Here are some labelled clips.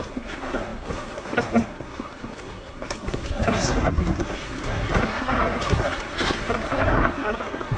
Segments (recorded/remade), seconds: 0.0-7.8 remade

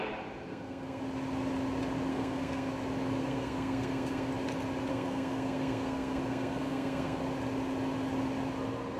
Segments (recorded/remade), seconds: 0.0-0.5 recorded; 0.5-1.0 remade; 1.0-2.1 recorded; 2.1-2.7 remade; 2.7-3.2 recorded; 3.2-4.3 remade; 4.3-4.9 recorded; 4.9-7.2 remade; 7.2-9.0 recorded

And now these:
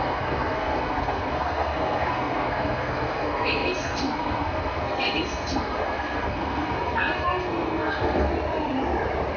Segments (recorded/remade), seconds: 0.0-8.3 remade; 8.3-9.4 recorded

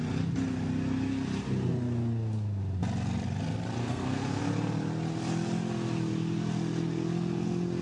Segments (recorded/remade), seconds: 0.0-3.8 recorded; 3.8-4.4 remade; 4.4-7.8 recorded